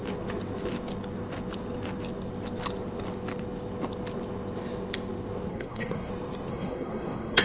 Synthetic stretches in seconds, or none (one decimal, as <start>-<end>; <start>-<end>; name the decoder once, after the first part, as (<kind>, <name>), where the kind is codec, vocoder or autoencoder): 5.5-6.1 (codec, SNAC); 6.5-7.4